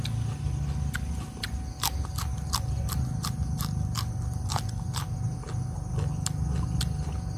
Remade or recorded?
recorded